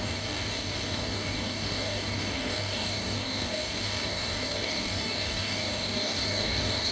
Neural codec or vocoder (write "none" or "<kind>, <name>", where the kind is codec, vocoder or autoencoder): codec, DAC